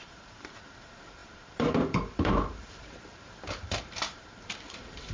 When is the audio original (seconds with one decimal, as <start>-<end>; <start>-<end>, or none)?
none